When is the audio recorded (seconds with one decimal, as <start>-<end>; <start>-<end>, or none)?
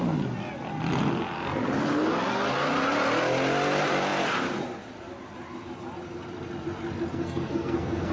0.0-7.1